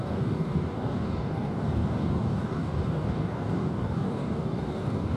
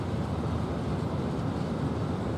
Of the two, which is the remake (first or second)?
first